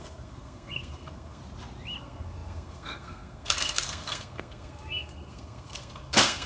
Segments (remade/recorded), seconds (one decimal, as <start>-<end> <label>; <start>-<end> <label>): 0.0-1.4 remade; 1.4-2.0 recorded; 2.0-6.5 remade

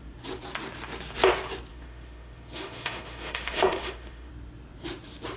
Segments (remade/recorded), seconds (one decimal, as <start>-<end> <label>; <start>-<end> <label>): 0.0-1.7 recorded; 1.7-4.3 remade; 4.3-5.4 recorded